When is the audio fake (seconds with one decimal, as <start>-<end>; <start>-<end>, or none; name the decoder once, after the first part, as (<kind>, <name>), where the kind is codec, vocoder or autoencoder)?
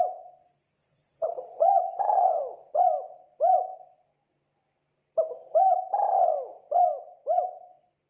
0.8-2.4 (vocoder, Vocos)